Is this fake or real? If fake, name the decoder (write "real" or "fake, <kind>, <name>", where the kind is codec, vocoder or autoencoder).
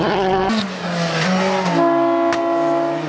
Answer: real